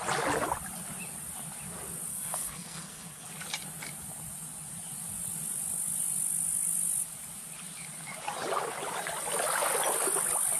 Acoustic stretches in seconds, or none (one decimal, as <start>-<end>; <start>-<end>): 0.0-2.1; 3.3-10.6